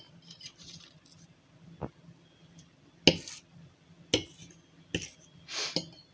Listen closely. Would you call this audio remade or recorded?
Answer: recorded